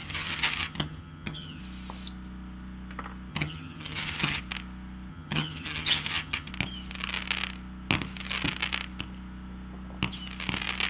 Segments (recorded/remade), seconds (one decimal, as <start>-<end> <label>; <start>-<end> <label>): 0.0-1.6 remade; 1.6-3.3 recorded; 3.3-4.4 remade; 4.4-5.1 recorded; 5.1-6.5 remade; 6.5-10.9 recorded